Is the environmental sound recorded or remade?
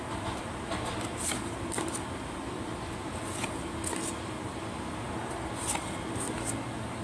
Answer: recorded